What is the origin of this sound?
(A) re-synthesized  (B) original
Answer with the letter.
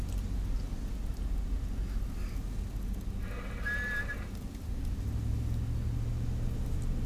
B